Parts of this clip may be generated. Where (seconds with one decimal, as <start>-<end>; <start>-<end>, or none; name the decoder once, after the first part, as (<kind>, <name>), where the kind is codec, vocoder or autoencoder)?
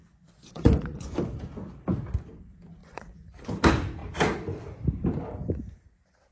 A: 0.0-1.1 (vocoder, Vocos); 2.8-3.3